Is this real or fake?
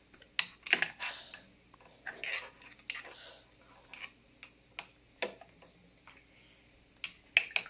real